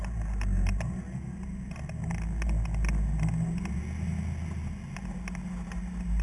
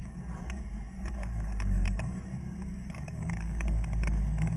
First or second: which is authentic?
first